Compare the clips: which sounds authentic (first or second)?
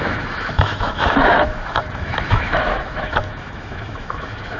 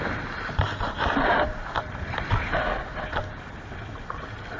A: second